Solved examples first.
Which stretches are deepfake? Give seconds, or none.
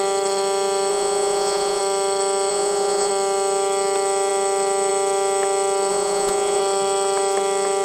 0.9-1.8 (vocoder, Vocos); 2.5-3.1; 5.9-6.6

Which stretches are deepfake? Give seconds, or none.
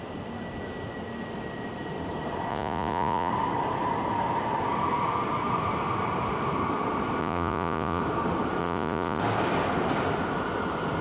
2.5-3.3 (vocoder, Vocos); 7.2-8.0; 8.6-9.2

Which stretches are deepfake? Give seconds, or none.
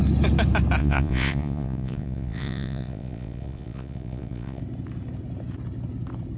0.8-4.6 (vocoder, Vocos)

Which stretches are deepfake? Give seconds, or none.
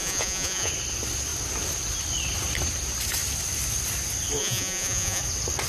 0.0-0.7 (vocoder, Vocos); 4.4-5.2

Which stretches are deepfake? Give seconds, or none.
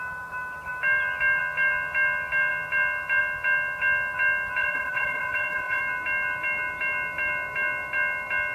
4.6-5.8 (vocoder, Vocos)